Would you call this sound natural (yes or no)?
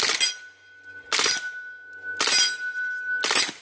yes